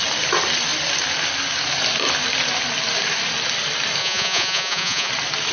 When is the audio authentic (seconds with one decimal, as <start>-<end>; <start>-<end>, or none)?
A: 0.0-4.0; 5.1-5.5